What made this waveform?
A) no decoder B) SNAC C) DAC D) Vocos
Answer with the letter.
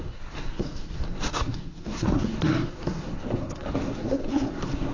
B